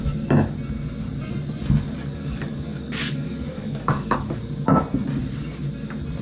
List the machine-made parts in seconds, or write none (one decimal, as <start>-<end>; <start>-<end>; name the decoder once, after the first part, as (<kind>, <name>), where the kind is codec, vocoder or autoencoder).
2.0-4.4 (codec, DAC)